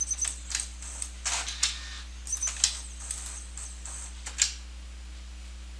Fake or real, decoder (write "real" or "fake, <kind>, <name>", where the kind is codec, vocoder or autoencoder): real